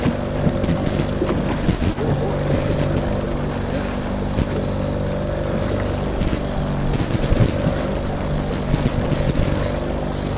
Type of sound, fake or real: real